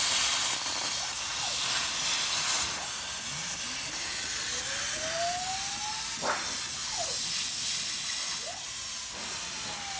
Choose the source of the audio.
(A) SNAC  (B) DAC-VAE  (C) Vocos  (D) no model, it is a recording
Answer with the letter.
D